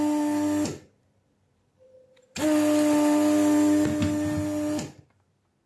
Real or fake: real